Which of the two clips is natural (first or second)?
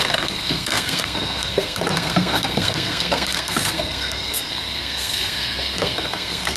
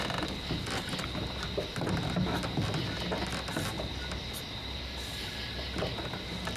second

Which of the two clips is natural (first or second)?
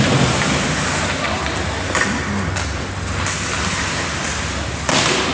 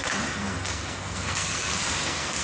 first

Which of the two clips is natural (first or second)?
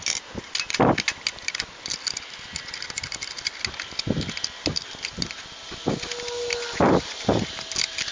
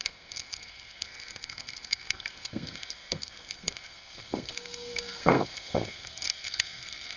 first